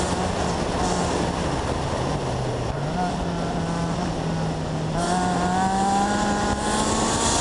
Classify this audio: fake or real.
real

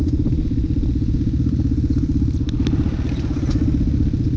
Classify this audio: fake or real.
real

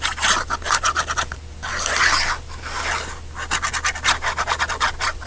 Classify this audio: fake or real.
real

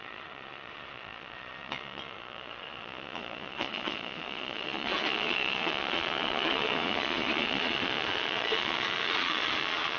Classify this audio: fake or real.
fake